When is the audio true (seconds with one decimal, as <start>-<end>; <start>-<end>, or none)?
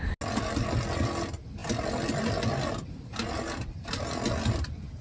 0.0-5.0